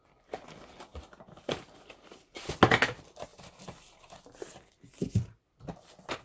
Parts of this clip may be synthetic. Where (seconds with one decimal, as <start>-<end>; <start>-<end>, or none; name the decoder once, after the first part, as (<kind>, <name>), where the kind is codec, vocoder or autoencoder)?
none